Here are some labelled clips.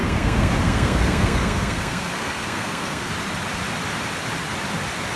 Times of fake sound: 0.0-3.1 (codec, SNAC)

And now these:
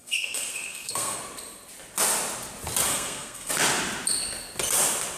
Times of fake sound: 0.0-1.2 (codec, SNAC); 2.9-3.5

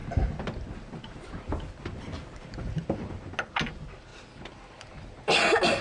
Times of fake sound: none

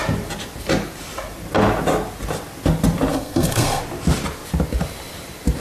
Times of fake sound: 3.1-3.8 (codec, SNAC)